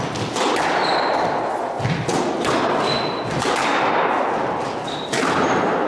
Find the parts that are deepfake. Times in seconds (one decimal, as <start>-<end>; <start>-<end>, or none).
none